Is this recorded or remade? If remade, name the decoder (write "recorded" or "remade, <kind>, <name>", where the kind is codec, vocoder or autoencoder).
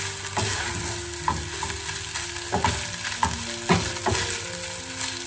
recorded